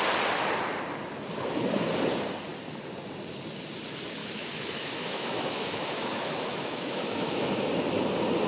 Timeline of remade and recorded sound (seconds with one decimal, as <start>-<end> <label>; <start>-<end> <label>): 0.0-4.2 recorded; 4.2-7.5 remade; 7.5-8.5 recorded